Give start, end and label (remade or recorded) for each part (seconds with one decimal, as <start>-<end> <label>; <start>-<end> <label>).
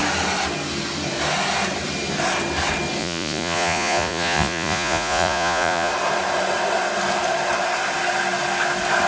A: 0.0-3.0 recorded; 3.0-5.9 remade; 5.9-9.1 recorded